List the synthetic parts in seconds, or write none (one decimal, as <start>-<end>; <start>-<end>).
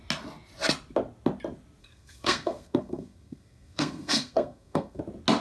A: 1.8-5.0